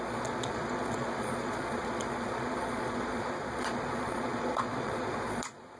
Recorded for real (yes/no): no